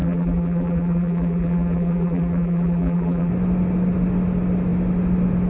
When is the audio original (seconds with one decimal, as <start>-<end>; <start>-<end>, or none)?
3.3-5.5